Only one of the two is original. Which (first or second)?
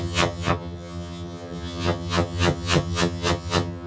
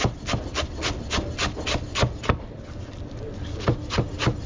second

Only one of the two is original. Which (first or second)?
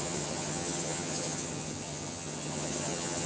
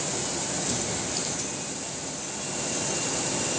second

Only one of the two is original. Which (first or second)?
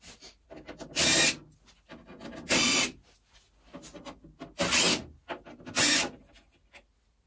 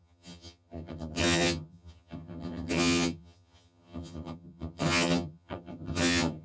first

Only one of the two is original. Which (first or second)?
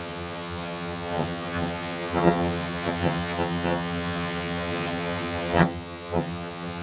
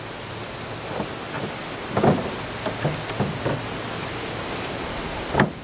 second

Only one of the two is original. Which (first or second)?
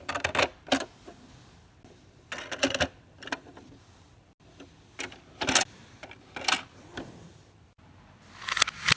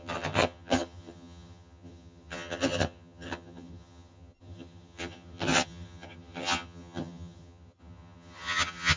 first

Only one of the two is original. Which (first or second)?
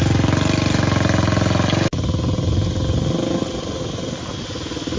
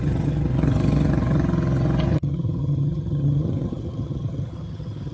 first